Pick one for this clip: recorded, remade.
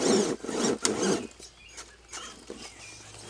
recorded